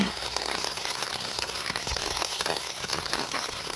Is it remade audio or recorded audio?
remade